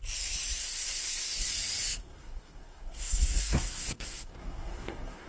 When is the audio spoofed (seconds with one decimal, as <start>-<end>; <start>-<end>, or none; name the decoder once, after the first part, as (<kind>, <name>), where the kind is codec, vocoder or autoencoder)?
0.6-1.5 (codec, SNAC); 2.0-5.3